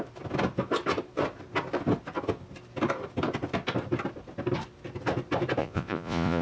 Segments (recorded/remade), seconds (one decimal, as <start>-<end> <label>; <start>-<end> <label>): 0.0-5.6 recorded; 5.6-6.4 remade